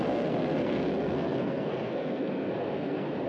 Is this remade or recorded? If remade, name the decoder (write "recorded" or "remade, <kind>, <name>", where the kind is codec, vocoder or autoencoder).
remade, codec, SNAC